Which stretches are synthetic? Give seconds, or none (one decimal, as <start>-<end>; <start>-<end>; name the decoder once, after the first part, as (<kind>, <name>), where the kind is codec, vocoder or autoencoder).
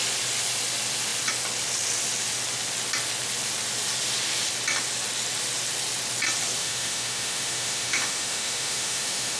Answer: 6.6-9.4 (autoencoder, DAC-VAE)